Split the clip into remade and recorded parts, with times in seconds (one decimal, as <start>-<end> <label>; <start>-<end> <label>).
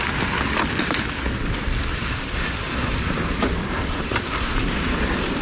0.0-1.9 recorded; 1.9-5.4 remade